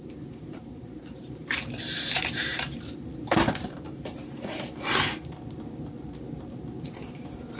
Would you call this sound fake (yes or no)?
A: yes